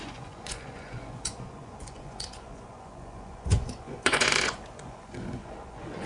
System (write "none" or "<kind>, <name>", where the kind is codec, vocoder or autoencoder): vocoder, Vocos